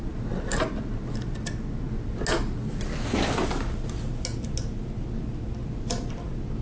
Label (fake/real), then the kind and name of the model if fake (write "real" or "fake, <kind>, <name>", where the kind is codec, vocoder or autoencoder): real